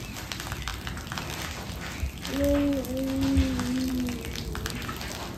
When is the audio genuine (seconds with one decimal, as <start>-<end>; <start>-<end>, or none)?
0.0-5.4